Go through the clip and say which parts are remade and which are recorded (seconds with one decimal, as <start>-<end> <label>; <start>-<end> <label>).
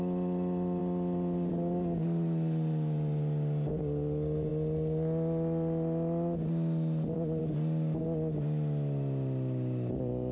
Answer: 0.0-10.3 recorded